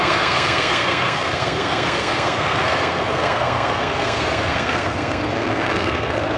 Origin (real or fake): fake